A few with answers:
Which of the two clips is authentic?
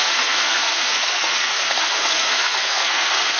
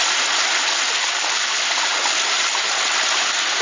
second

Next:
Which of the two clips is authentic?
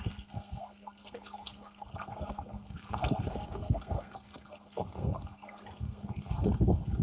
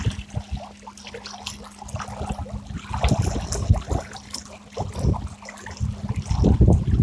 second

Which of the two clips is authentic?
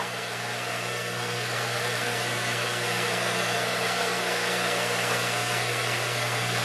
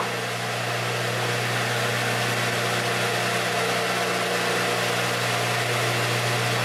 second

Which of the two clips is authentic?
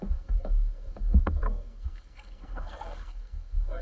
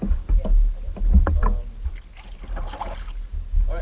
second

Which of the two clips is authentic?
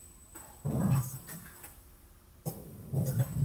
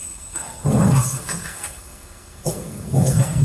first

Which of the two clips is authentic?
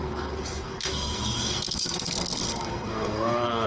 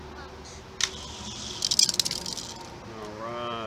second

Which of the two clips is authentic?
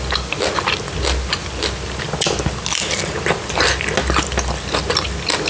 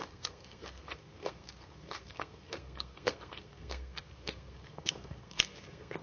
first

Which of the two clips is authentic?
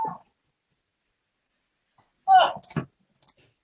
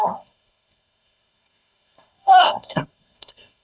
first